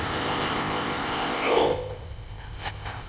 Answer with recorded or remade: remade